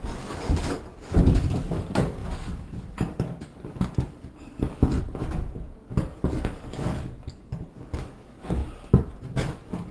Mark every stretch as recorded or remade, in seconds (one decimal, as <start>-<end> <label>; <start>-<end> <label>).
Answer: 0.0-8.6 remade; 8.6-9.3 recorded; 9.3-9.9 remade